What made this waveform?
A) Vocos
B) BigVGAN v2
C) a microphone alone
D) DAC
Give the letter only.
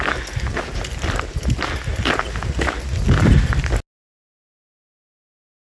C